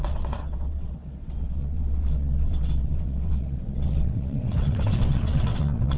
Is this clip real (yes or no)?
no